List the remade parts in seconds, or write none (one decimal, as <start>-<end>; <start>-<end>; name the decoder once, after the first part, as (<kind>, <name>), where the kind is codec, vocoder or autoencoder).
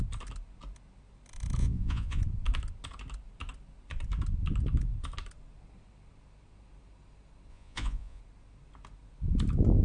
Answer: 1.6-2.2 (vocoder, Vocos); 7.5-8.2